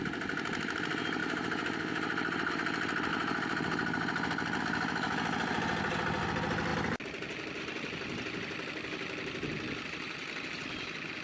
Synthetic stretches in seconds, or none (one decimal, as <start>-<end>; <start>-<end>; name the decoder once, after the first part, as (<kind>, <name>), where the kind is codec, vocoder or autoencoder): 1.2-2.5 (vocoder, BigVGAN v2); 3.1-4.6